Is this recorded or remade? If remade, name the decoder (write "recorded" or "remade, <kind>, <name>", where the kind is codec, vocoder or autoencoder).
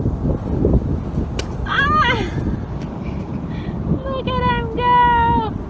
recorded